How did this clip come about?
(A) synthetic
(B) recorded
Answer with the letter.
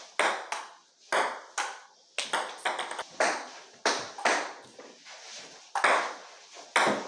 B